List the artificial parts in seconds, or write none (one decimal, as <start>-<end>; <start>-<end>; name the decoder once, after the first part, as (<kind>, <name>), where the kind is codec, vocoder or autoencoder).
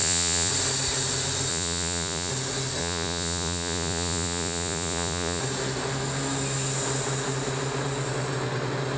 0.0-0.5 (vocoder, Vocos); 1.5-2.3; 2.8-5.4